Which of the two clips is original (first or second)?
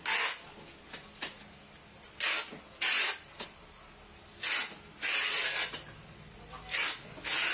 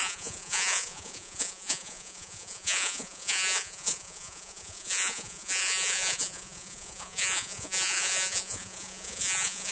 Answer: first